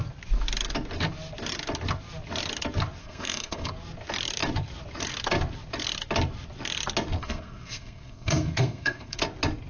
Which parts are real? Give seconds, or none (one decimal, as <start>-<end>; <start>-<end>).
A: 0.0-3.0; 3.7-7.2; 9.2-9.7